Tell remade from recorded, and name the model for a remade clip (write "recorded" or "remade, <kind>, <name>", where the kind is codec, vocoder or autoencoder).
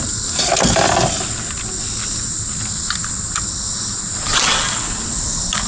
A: recorded